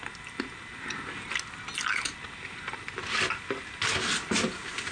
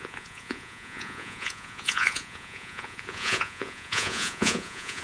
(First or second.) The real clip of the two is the first